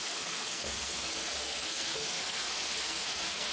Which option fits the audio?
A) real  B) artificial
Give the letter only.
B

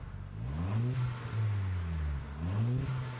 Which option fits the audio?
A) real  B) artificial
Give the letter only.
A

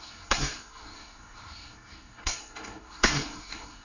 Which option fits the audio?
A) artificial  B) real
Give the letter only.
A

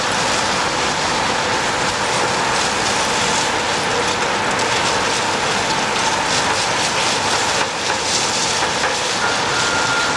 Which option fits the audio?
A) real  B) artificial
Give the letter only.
A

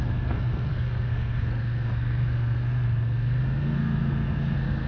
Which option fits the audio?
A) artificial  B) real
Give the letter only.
A